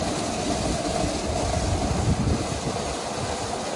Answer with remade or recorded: recorded